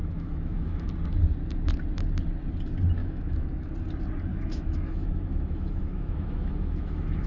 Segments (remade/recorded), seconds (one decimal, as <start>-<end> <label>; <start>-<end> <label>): 0.0-0.9 remade; 0.9-3.0 recorded; 3.0-3.7 remade; 3.7-4.3 recorded; 4.3-7.3 remade